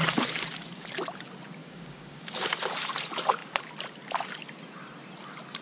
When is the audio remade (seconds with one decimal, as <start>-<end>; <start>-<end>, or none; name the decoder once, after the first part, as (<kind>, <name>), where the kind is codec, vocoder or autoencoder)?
1.6-2.7 (codec, DAC)